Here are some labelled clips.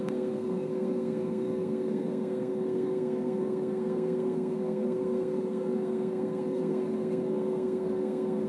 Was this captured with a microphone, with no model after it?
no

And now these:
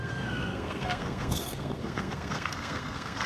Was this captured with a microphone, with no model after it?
no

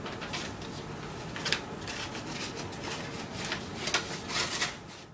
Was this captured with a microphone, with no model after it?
yes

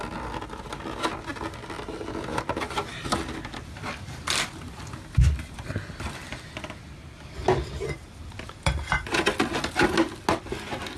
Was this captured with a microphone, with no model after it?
yes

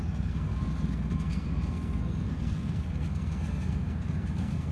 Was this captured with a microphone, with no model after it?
no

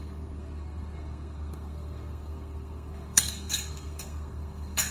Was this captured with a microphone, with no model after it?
no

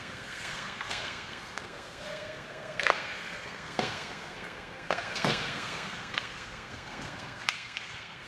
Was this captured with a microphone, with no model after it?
no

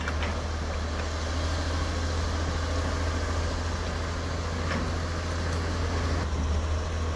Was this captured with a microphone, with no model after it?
yes